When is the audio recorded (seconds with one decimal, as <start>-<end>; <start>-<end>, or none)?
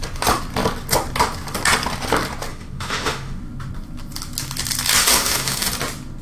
0.0-2.5; 3.4-5.0; 5.7-6.2